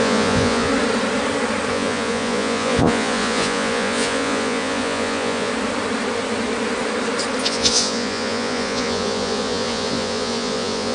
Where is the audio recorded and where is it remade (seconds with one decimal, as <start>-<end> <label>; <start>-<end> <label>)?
0.0-0.7 remade; 0.7-1.7 recorded; 1.7-5.5 remade; 5.5-7.4 recorded; 7.4-10.9 remade